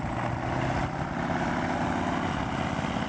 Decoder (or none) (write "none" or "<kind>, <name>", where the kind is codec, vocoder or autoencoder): none